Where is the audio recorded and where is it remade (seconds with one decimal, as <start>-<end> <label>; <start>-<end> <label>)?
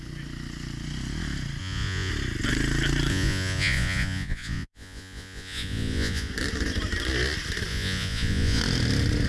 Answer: 0.0-1.6 recorded; 1.6-2.1 remade; 2.1-3.1 recorded; 3.1-6.3 remade; 6.3-7.7 recorded; 7.7-8.6 remade; 8.6-9.3 recorded